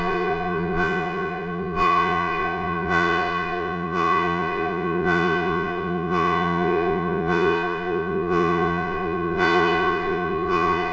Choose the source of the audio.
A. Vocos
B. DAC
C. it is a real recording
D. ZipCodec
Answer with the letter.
A